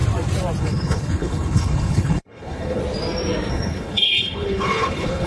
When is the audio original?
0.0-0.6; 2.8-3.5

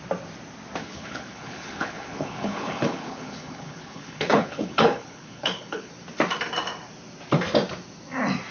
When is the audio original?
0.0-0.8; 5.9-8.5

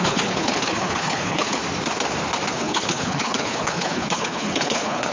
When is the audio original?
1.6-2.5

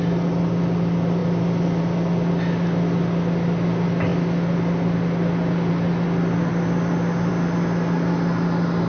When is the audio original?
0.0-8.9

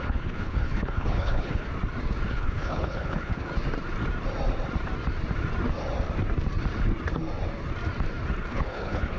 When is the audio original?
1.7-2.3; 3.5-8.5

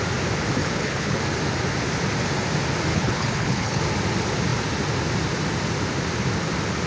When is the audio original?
0.0-0.6; 1.2-2.9; 3.8-6.9

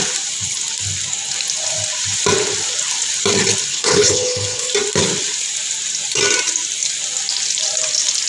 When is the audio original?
0.0-3.7; 4.7-8.3